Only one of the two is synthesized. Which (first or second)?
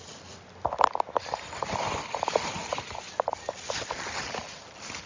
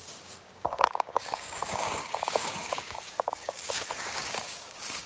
second